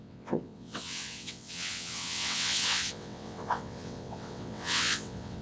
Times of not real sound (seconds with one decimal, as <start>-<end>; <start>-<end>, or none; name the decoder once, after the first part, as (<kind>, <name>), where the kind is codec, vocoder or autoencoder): 0.0-5.4 (vocoder, WaveNeXt)